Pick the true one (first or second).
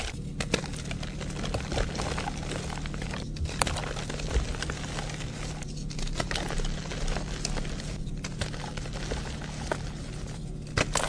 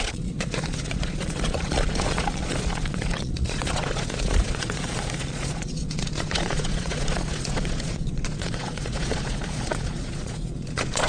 first